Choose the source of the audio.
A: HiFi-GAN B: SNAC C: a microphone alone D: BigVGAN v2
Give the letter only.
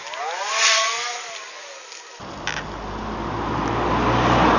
C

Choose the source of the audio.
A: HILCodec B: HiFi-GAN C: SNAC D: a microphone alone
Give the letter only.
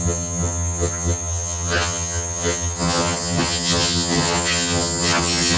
B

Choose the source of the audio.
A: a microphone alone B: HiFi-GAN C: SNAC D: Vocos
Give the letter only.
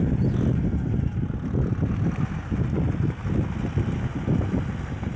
A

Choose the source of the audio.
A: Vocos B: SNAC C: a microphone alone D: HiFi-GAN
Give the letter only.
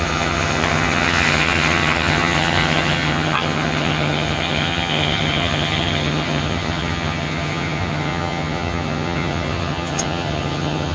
D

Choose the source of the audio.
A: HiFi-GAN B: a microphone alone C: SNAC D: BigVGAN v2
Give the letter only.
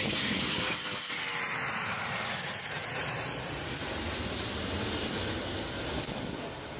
B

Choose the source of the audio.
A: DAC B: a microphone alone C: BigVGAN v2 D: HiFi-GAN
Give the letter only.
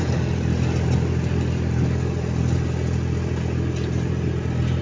B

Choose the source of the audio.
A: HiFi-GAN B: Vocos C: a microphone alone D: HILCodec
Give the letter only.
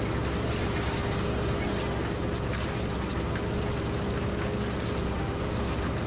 C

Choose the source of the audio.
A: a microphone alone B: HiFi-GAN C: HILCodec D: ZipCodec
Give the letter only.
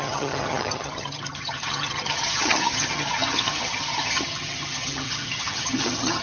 B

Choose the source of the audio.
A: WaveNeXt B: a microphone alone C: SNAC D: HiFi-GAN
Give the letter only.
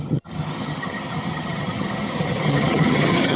D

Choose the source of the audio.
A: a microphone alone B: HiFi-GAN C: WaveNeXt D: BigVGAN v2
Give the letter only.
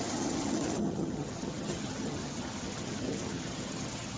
B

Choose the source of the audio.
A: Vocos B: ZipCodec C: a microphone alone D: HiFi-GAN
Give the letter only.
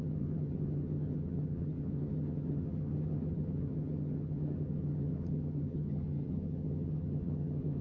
D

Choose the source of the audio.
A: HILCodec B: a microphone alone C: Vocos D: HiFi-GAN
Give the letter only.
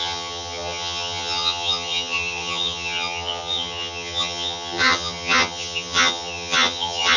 D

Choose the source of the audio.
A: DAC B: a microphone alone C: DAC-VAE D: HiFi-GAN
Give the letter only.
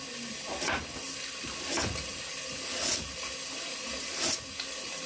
B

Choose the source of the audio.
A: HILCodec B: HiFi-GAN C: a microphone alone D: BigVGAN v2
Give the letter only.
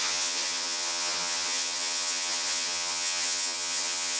B